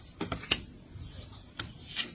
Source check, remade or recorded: recorded